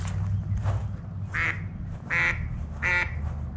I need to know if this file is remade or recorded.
recorded